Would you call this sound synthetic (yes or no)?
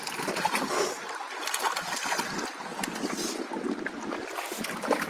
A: no